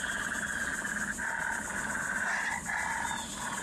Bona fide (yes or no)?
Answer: yes